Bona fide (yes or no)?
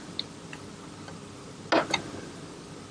yes